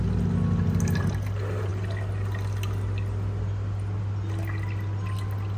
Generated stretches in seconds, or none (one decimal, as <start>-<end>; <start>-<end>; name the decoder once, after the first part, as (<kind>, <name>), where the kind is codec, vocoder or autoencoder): none